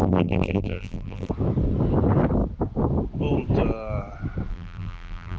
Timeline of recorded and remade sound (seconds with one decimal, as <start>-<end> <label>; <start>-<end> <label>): 0.0-1.3 remade; 1.3-4.5 recorded; 4.5-5.4 remade